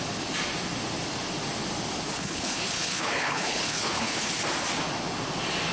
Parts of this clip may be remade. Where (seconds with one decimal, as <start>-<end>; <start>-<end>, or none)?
2.1-4.3